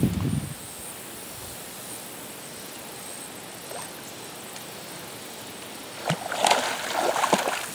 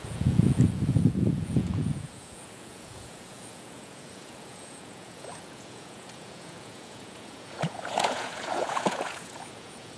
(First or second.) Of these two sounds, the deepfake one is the second